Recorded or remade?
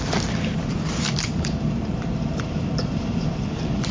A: remade